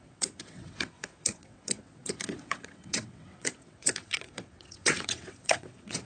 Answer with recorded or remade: remade